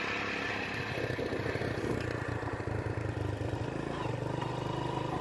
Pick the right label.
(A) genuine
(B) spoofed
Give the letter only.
A